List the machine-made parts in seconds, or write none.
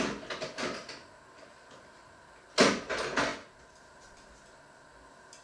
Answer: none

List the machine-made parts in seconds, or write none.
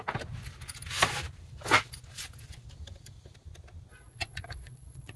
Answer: 3.9-5.2 (vocoder, Vocos)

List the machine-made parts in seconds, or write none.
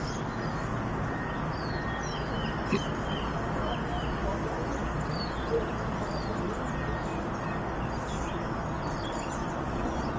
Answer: 9.4-10.2 (vocoder, Vocos)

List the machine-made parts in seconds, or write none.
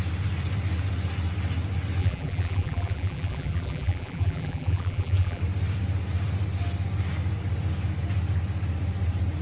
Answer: 2.0-5.4 (vocoder, BigVGAN v2)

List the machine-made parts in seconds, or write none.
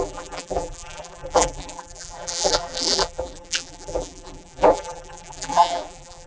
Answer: 0.0-6.3 (vocoder, BigVGAN v2)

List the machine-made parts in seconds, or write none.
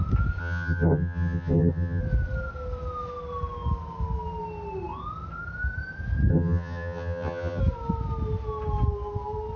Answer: 0.4-2.0 (vocoder, HiFi-GAN); 6.3-7.6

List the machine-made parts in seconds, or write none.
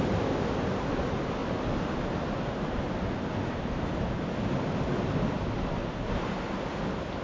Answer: 5.8-6.6 (vocoder, BigVGAN v2)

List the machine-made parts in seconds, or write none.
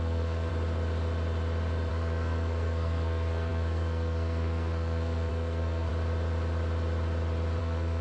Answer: 0.0-0.5 (codec, SNAC); 1.9-5.9; 7.6-8.0